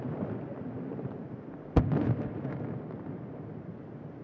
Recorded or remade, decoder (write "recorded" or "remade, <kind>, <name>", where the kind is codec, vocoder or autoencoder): recorded